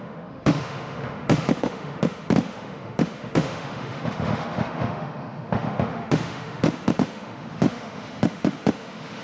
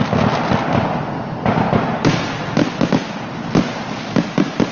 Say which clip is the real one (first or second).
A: second